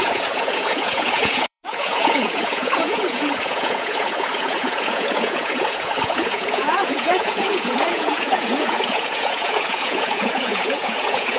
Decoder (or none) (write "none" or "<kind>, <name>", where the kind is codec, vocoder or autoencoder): vocoder, Vocos